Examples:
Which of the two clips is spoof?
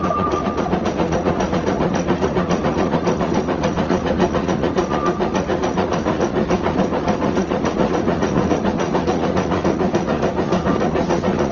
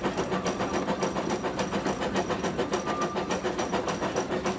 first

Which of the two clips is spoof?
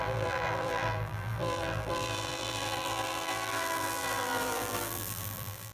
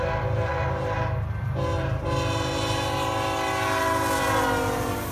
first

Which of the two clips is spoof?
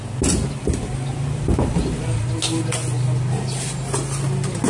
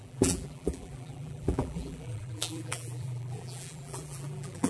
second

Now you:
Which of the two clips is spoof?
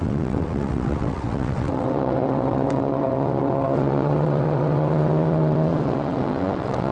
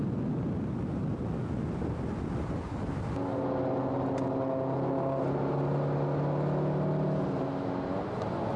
first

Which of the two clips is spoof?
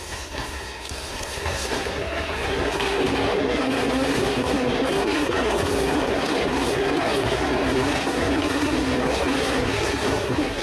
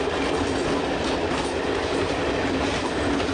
first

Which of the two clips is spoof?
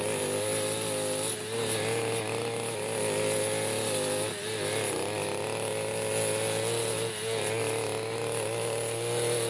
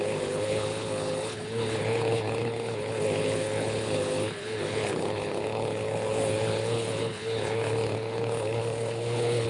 second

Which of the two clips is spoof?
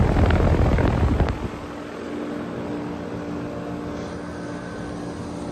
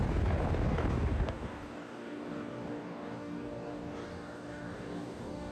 second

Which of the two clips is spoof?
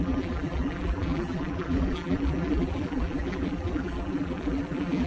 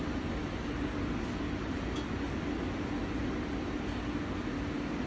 first